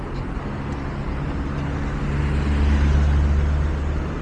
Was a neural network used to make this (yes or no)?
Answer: no